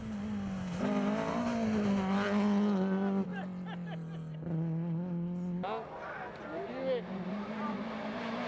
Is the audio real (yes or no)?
yes